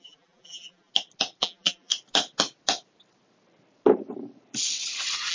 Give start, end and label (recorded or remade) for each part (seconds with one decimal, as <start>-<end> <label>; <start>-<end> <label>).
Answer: 0.0-0.9 remade; 0.9-1.4 recorded; 1.4-1.9 remade; 1.9-5.3 recorded